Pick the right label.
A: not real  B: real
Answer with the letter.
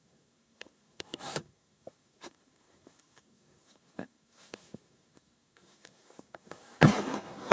A